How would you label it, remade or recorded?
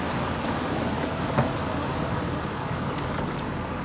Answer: remade